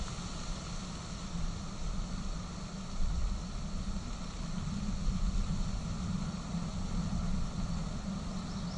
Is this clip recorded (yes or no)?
yes